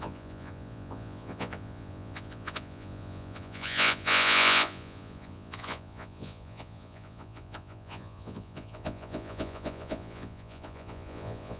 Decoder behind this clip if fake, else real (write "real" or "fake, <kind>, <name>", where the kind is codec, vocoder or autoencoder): fake, vocoder, Vocos